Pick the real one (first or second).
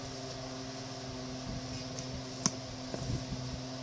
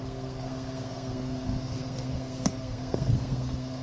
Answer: first